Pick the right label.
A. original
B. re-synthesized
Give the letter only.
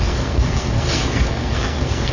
B